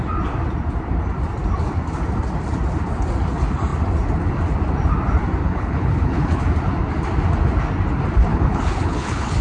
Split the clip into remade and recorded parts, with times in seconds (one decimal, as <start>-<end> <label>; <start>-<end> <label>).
0.0-5.4 recorded; 5.4-6.4 remade; 6.4-8.3 recorded; 8.3-9.4 remade